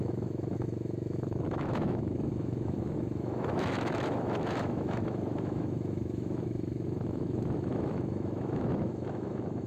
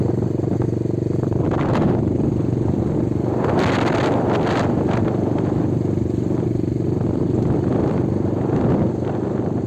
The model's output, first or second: first